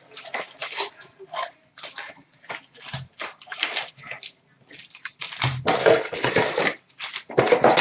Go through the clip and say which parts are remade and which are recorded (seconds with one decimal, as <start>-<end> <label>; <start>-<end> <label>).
0.0-5.8 recorded; 5.8-6.3 remade; 6.3-7.8 recorded